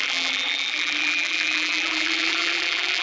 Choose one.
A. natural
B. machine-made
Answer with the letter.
B